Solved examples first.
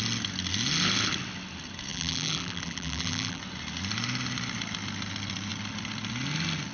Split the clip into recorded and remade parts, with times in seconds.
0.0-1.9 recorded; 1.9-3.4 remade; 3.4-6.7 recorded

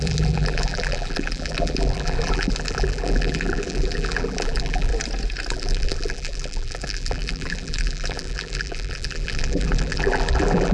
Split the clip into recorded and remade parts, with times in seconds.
0.0-4.9 remade; 4.9-5.5 recorded; 5.5-10.7 remade

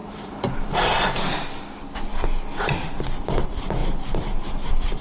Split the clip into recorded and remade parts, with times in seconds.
0.0-1.3 remade; 1.3-2.8 recorded; 2.8-5.0 remade

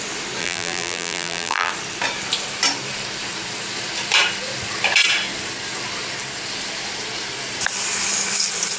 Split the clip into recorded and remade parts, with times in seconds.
0.0-0.4 recorded; 0.4-1.7 remade; 1.7-8.8 recorded